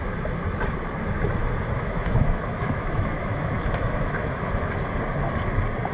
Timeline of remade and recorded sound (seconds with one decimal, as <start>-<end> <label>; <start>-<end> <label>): 0.0-1.4 recorded; 1.4-4.7 remade; 4.7-5.9 recorded